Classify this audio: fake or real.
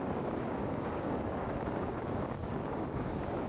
fake